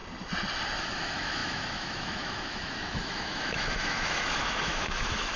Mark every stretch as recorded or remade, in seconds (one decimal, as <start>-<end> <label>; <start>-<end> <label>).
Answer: 0.0-0.8 recorded; 0.8-5.4 remade